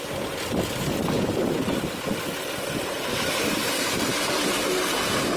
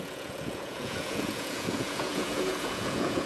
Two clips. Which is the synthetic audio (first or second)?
second